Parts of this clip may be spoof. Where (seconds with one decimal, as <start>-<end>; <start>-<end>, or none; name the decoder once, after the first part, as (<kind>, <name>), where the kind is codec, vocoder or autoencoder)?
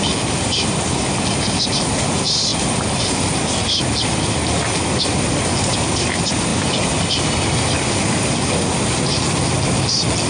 none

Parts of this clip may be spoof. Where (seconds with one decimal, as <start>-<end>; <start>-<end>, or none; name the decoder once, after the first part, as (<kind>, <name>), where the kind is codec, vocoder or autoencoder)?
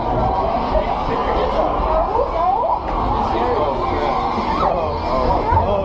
none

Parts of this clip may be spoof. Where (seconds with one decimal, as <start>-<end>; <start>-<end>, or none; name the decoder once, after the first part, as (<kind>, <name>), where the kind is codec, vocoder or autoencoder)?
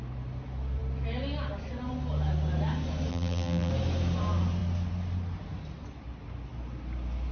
3.1-3.7 (vocoder, BigVGAN v2)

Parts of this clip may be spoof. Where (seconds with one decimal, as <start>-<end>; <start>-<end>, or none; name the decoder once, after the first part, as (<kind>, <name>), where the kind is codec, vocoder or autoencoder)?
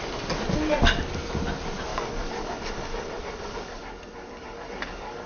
1.9-5.3 (codec, DAC)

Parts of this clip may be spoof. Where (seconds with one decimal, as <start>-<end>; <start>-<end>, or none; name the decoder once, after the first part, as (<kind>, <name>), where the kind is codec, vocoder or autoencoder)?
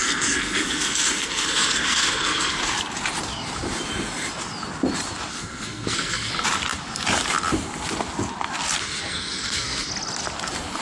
0.0-2.6 (codec, SNAC); 5.3-6.3; 8.8-9.9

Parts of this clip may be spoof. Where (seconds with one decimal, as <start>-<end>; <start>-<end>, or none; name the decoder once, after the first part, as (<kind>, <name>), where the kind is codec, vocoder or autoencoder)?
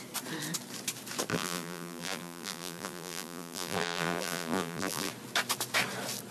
1.3-5.1 (vocoder, BigVGAN v2)